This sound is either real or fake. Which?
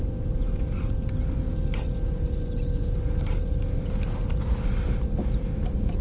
real